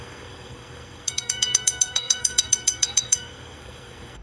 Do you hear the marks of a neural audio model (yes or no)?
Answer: yes